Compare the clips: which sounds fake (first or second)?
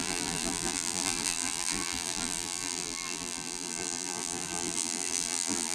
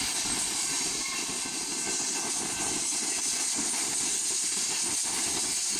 first